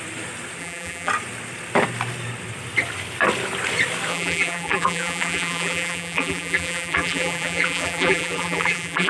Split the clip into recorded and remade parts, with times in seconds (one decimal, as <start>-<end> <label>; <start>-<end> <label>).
0.0-0.6 recorded; 0.6-1.1 remade; 1.1-4.1 recorded; 4.1-9.1 remade